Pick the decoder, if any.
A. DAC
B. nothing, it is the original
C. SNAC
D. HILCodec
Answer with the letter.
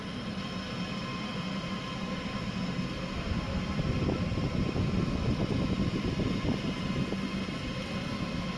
B